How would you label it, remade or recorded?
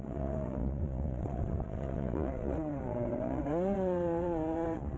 remade